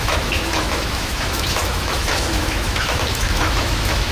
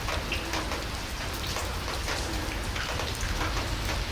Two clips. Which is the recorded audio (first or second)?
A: second